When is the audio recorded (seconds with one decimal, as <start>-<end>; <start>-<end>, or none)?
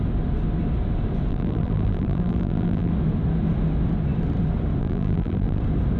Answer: 0.0-1.3; 2.9-4.8; 5.6-6.0